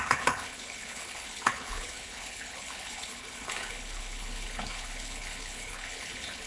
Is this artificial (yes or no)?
yes